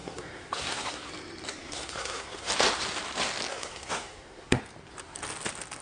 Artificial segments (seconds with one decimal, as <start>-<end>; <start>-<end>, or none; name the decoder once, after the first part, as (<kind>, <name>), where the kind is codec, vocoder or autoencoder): 0.0-1.1 (codec, SNAC); 1.5-2.5; 3.5-4.6